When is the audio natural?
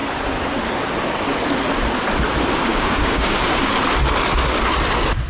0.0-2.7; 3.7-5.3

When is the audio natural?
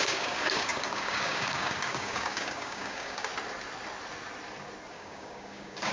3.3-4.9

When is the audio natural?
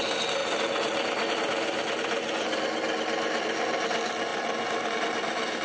0.0-5.6